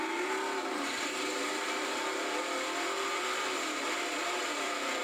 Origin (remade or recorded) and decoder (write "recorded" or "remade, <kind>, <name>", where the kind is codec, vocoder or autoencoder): recorded